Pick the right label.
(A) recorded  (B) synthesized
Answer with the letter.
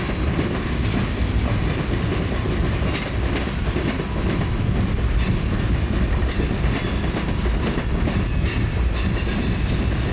A